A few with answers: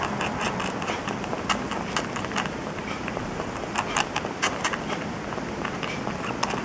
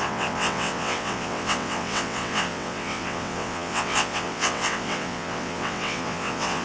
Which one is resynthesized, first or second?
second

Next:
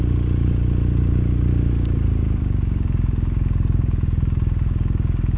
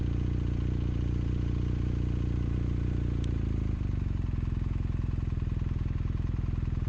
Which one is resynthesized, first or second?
first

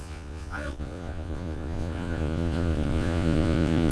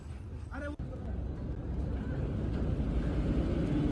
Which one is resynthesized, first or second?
first